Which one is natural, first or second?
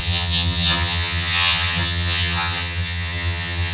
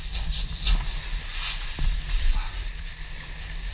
second